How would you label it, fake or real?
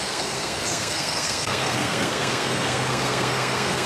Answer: fake